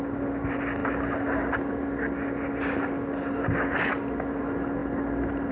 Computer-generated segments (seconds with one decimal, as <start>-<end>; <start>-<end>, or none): none